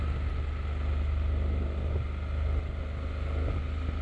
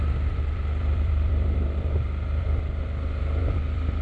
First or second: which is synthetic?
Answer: second